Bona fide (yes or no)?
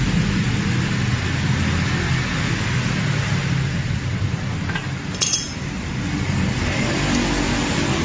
yes